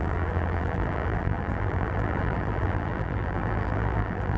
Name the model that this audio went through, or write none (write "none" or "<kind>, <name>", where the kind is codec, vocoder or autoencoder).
vocoder, BigVGAN v2